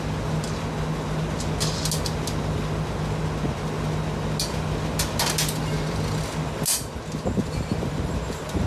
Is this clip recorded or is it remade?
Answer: recorded